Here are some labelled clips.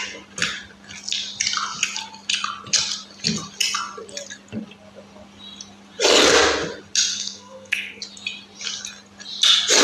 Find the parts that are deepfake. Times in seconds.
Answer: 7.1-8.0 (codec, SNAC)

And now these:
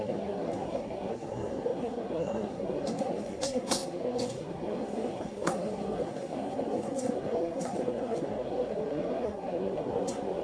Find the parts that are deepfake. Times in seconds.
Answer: 0.0-10.4 (codec, SNAC)

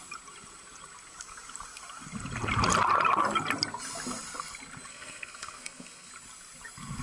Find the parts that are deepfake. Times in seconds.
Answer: 4.9-6.1 (codec, SNAC)

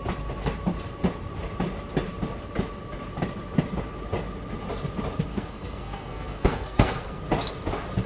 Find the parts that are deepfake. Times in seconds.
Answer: 5.3-7.2 (codec, SNAC)

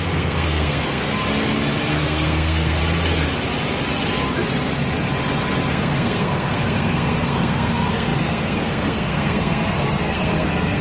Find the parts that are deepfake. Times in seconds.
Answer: 0.0-1.1 (codec, SNAC); 1.9-2.8; 5.7-10.8

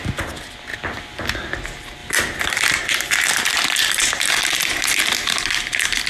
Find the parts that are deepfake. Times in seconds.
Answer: none

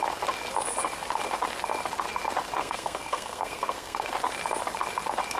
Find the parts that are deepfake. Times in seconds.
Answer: 2.6-4.1 (codec, SNAC)

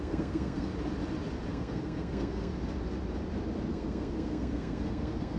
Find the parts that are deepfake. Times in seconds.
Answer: 0.0-0.7 (codec, SNAC); 1.5-2.5; 3.7-5.4